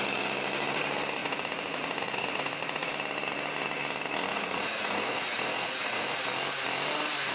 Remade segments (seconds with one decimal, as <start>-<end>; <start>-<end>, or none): 1.2-2.9; 4.3-6.2